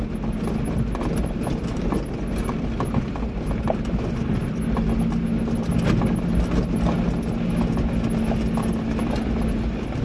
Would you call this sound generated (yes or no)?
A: no